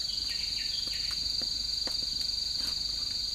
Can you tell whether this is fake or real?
real